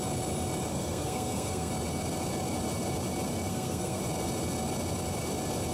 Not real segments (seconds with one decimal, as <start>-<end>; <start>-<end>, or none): 0.7-1.7; 3.5-4.0